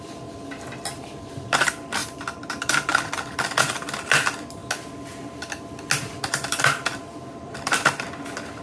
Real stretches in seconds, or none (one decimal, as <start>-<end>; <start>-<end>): 4.6-6.0